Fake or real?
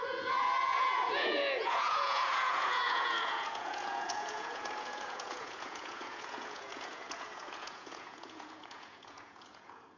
fake